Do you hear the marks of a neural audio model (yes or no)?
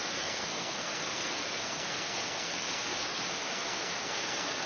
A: yes